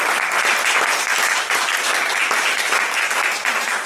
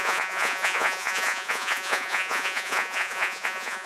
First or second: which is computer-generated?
second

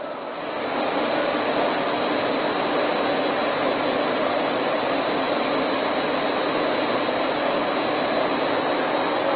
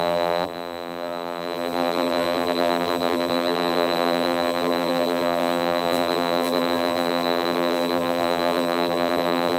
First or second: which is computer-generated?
second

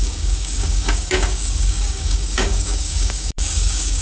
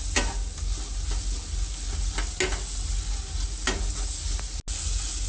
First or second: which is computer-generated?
first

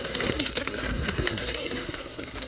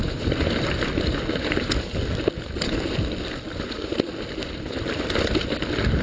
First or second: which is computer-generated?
first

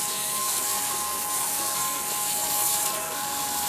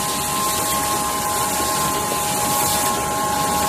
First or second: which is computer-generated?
first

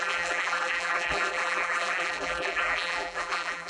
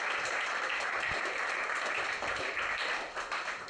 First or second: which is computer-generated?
first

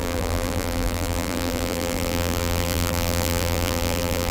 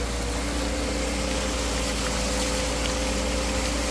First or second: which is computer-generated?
first